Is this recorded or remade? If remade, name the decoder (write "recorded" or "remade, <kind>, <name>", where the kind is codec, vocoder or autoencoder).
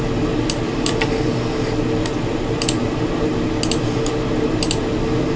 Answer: recorded